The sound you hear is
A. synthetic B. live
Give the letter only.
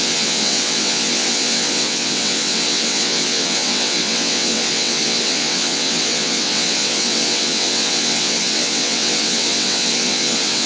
A